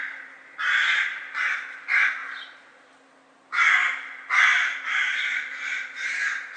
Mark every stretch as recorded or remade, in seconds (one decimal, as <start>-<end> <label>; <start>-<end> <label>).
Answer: 0.0-2.2 remade; 2.2-3.7 recorded; 3.7-6.6 remade